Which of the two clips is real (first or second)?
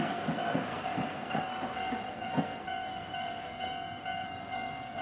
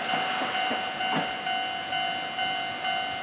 second